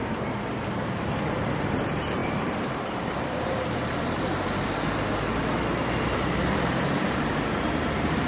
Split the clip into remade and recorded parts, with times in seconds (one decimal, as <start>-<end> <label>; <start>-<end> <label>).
0.0-1.1 remade; 1.1-2.2 recorded; 2.2-4.4 remade; 4.4-5.8 recorded; 5.8-7.3 remade; 7.3-8.3 recorded